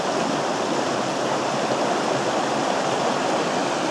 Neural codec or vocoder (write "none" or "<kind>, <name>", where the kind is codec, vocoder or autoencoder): none